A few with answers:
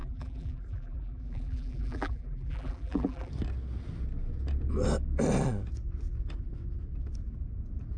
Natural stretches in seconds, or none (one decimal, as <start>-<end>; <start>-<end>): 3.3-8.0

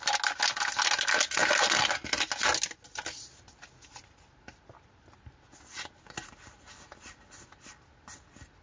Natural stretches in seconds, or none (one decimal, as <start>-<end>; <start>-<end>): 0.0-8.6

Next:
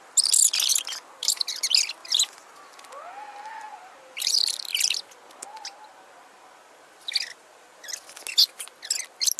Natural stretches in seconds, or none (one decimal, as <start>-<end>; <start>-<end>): 0.0-0.7; 1.5-2.0; 2.9-9.4

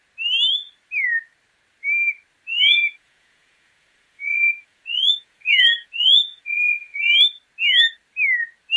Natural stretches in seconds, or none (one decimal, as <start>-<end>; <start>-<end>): 0.0-2.5; 7.1-8.8

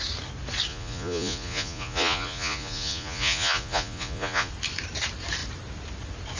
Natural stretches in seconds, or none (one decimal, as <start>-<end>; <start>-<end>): 0.0-0.7; 4.5-6.4